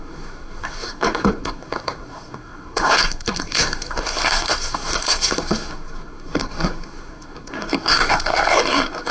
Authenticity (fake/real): fake